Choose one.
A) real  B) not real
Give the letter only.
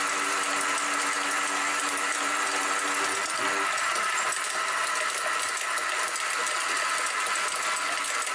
A